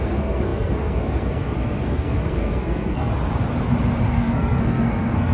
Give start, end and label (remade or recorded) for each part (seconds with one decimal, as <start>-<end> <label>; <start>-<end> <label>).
0.0-3.1 remade; 3.1-4.1 recorded; 4.1-5.3 remade